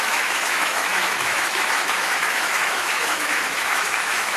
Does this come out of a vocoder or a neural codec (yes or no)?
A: yes